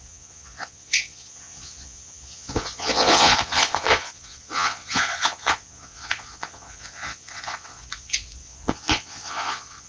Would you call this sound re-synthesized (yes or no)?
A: yes